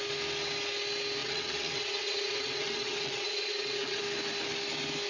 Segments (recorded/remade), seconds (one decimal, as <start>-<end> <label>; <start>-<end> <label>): 0.0-1.2 recorded; 1.2-4.0 remade; 4.0-5.1 recorded